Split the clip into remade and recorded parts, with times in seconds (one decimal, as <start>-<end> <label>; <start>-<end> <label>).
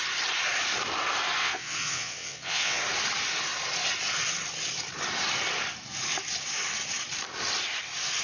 0.0-1.4 recorded; 1.4-2.8 remade; 2.8-8.2 recorded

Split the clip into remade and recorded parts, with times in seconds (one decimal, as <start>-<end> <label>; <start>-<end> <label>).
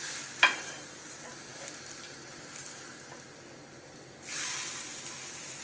0.0-5.6 recorded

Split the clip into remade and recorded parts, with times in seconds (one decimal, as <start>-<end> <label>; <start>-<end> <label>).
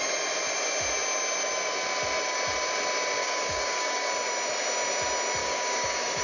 0.0-3.2 recorded; 3.2-4.1 remade; 4.1-5.4 recorded; 5.4-6.2 remade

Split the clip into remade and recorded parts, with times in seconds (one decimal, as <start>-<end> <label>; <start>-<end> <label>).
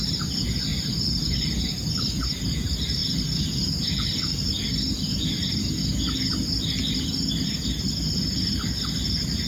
0.0-0.7 recorded; 0.7-1.9 remade; 1.9-9.5 recorded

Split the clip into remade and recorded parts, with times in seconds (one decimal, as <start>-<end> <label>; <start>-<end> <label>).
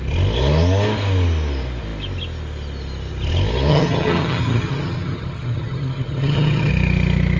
0.0-3.7 recorded; 3.7-6.7 remade; 6.7-7.4 recorded